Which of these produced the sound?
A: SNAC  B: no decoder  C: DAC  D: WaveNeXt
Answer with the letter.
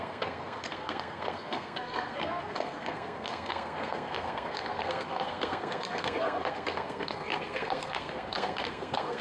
A